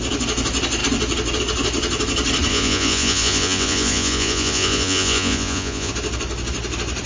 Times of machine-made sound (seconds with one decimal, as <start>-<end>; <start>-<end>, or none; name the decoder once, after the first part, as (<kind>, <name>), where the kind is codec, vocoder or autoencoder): 2.5-5.9 (vocoder, Vocos)